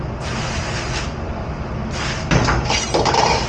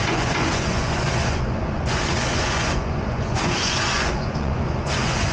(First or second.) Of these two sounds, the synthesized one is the second